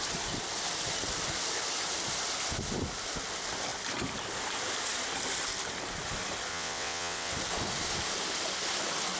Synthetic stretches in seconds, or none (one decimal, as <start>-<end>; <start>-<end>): 6.5-7.3